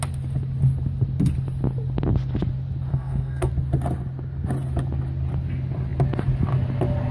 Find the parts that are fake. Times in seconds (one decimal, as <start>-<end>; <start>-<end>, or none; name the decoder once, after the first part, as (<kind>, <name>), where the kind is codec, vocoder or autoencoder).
2.9-3.5 (codec, SNAC)